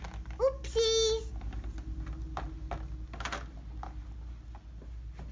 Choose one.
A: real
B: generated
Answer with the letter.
A